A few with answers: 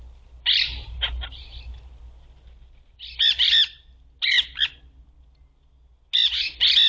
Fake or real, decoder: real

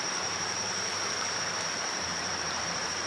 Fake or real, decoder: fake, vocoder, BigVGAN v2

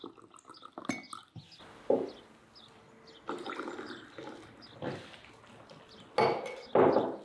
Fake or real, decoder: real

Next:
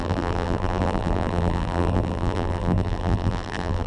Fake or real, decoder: fake, vocoder, BigVGAN v2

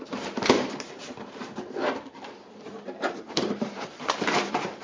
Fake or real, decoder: fake, vocoder, BigVGAN v2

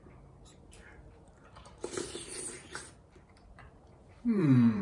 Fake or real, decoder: fake, vocoder, BigVGAN v2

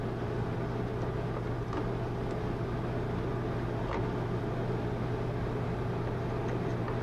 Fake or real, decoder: real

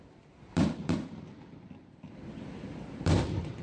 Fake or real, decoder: fake, vocoder, BigVGAN v2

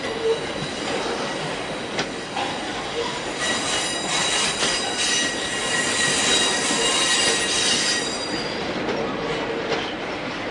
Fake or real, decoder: real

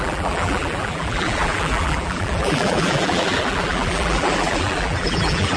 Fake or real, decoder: fake, vocoder, BigVGAN v2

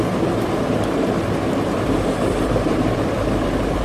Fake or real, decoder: fake, vocoder, BigVGAN v2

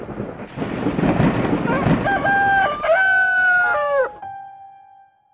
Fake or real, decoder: real